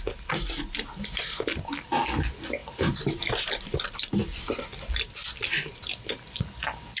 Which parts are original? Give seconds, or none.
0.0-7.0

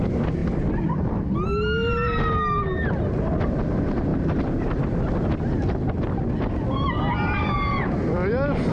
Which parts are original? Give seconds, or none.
0.0-4.1; 5.1-8.7

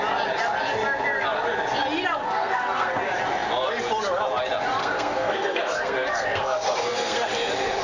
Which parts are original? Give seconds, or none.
0.0-2.2; 2.9-4.8; 7.3-7.8